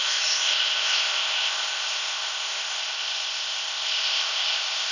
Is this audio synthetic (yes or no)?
yes